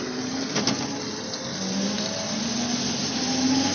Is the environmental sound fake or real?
real